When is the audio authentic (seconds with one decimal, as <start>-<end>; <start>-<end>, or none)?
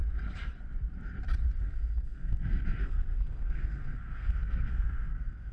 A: 0.0-1.6